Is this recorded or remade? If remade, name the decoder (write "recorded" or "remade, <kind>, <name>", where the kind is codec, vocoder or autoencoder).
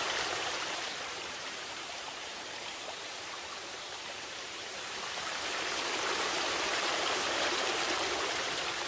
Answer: remade, vocoder, BigVGAN v2